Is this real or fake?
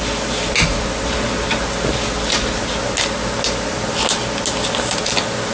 real